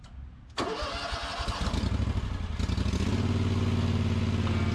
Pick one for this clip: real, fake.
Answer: real